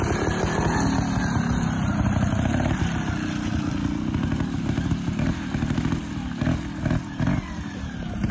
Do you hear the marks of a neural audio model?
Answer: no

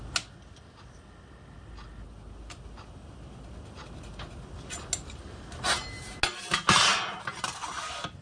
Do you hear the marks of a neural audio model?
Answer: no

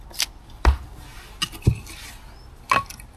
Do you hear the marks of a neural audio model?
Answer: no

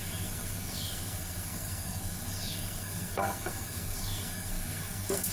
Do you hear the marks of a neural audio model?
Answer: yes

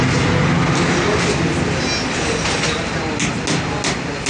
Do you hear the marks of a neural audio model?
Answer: no